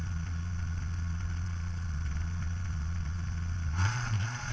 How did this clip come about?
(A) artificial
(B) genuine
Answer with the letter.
A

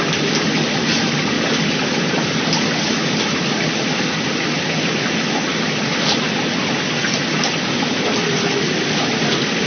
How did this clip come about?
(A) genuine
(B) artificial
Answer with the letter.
A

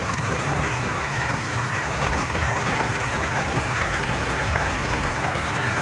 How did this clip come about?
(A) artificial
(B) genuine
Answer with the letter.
A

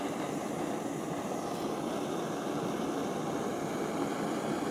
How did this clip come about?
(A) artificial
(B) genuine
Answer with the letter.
A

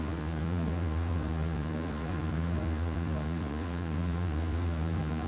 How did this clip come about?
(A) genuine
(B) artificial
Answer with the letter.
B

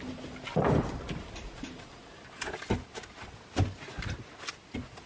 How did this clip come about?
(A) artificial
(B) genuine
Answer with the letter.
B